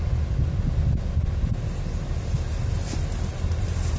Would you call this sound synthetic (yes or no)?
no